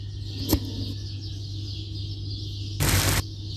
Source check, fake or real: real